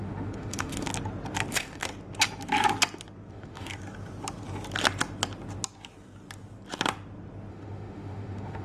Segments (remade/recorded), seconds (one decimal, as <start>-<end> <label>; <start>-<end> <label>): 0.0-0.9 remade; 0.9-1.5 recorded; 1.5-1.9 remade; 1.9-3.3 recorded; 3.3-3.7 remade; 3.7-7.5 recorded; 7.5-8.6 remade